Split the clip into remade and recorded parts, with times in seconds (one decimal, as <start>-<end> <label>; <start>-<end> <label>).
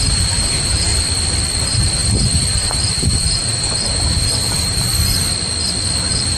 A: 0.0-0.9 remade; 0.9-1.6 recorded; 1.6-4.9 remade; 4.9-6.0 recorded; 6.0-6.4 remade